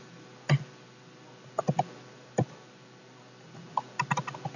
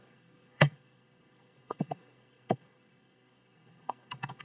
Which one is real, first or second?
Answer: first